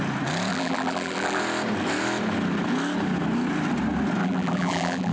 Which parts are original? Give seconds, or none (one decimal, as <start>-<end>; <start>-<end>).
0.0-0.5; 1.4-4.2